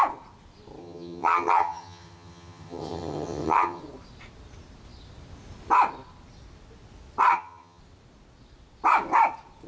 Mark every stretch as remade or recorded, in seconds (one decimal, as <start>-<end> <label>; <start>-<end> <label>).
0.0-0.8 recorded; 0.8-3.8 remade; 3.8-7.3 recorded; 7.3-7.8 remade; 7.8-9.7 recorded

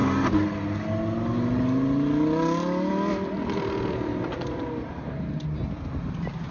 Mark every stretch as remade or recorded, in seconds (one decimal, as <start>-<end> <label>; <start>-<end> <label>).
0.0-6.5 recorded

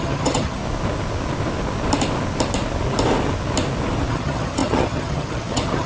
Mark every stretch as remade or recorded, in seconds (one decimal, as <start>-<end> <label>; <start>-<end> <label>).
0.0-0.6 remade; 0.6-4.1 recorded; 4.1-5.9 remade

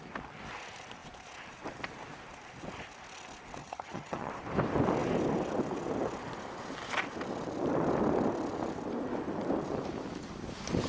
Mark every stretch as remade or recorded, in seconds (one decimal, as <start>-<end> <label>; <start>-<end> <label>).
0.0-3.6 recorded; 3.6-4.3 remade; 4.3-10.9 recorded

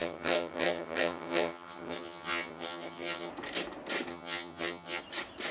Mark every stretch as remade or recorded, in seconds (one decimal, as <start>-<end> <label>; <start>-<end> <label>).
0.0-3.3 remade; 3.3-4.1 recorded; 4.1-5.0 remade; 5.0-5.5 recorded